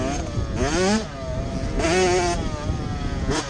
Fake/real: real